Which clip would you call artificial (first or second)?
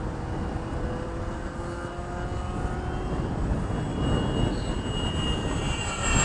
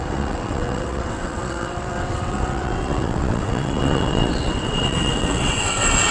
second